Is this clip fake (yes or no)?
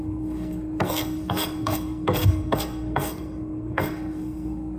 yes